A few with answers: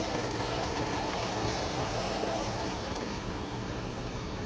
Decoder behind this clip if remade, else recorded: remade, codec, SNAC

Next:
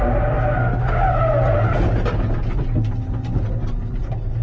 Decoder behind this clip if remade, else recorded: recorded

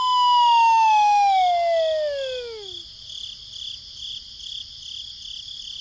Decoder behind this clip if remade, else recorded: recorded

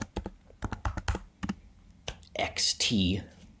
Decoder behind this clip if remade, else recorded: recorded